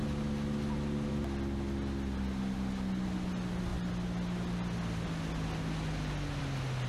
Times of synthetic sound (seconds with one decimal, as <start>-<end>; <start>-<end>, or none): none